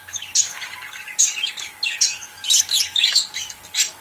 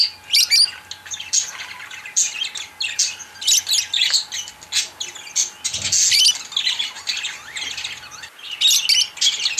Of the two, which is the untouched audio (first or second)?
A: second